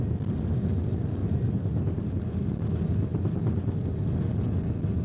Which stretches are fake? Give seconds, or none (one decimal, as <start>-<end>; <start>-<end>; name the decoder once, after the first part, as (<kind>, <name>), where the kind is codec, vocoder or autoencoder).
1.2-2.1 (vocoder, BigVGAN v2)